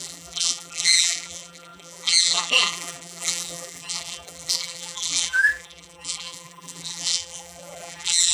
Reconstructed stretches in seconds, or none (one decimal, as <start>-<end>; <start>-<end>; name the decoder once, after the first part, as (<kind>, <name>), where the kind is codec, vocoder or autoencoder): 0.0-8.3 (vocoder, BigVGAN v2)